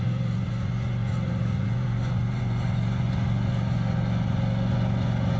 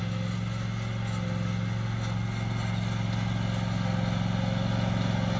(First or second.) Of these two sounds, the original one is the second